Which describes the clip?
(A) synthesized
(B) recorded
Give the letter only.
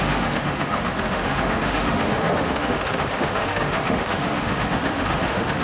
A